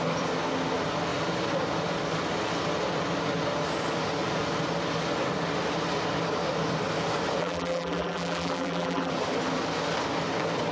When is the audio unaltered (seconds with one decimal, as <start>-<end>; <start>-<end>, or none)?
0.0-7.4; 9.1-10.7